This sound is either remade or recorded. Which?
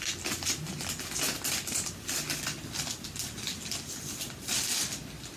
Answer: recorded